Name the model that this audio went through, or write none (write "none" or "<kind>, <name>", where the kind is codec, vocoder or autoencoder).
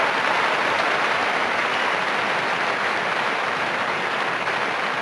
none